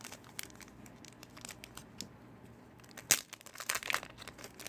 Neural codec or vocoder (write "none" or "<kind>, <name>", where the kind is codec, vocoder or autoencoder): none